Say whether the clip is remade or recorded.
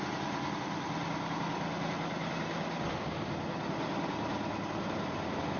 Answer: recorded